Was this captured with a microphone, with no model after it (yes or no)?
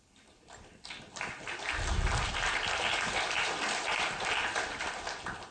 yes